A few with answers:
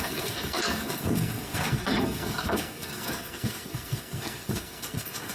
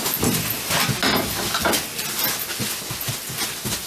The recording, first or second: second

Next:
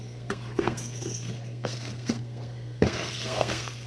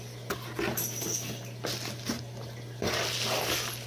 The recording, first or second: second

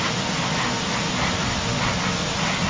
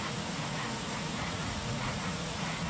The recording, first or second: first